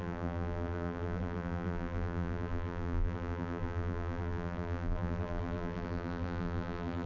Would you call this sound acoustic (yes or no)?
no